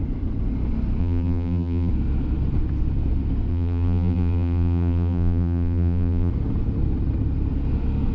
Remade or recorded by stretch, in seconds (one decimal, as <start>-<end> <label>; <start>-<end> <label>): 0.0-1.0 recorded; 1.0-1.9 remade; 1.9-3.5 recorded; 3.5-6.3 remade; 6.3-8.1 recorded